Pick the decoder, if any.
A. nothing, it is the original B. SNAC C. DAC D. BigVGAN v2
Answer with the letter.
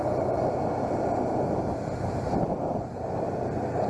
A